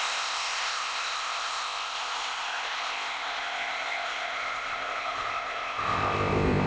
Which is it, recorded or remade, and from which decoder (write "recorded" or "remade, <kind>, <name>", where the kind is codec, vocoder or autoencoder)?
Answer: remade, codec, ZipCodec